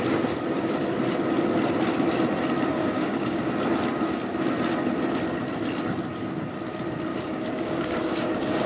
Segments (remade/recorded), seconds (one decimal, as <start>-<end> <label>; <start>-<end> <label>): 0.0-2.7 recorded; 2.7-3.5 remade; 3.5-7.1 recorded; 7.1-8.7 remade